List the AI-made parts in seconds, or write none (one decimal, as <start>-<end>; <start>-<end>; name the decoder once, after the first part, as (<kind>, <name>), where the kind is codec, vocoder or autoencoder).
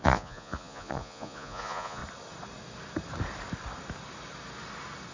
0.0-2.0 (vocoder, Vocos)